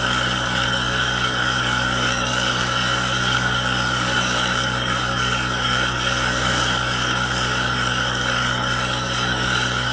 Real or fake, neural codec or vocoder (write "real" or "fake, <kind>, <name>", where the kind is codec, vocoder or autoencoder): fake, codec, DAC